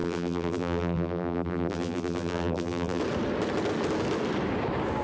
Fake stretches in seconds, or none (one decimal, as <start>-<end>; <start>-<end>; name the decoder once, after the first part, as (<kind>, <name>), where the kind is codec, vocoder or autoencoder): 0.0-3.0 (vocoder, BigVGAN v2)